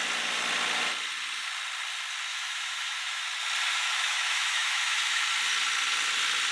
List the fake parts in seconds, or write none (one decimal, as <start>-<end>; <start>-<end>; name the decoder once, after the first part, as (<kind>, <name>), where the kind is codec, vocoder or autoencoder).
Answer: 2.3-3.2 (autoencoder, DAC-VAE); 3.7-5.3